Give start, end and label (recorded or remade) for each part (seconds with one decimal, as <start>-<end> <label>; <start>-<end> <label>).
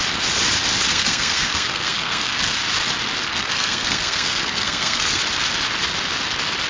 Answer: 0.0-0.9 recorded; 0.9-2.6 remade; 2.6-3.3 recorded; 3.3-5.2 remade; 5.2-6.7 recorded